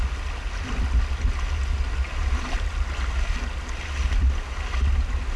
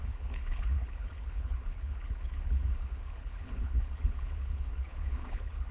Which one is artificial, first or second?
second